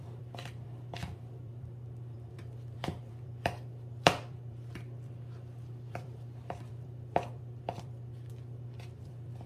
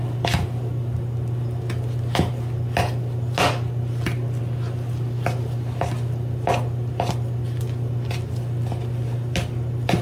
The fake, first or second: first